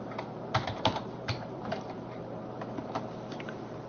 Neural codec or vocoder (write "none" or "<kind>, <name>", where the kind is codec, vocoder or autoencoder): vocoder, BigVGAN v2